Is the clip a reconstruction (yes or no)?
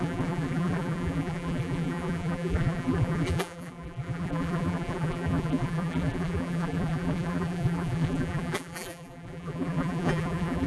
yes